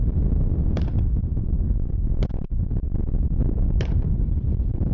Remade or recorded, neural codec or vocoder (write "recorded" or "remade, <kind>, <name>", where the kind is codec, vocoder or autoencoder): recorded